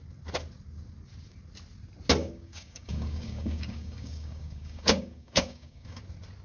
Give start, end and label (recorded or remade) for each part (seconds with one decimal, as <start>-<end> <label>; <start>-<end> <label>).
0.0-2.2 recorded; 2.2-6.0 remade; 6.0-6.4 recorded